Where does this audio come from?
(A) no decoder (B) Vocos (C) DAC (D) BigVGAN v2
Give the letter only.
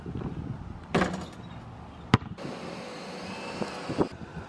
A